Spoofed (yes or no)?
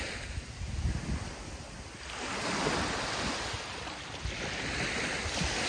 no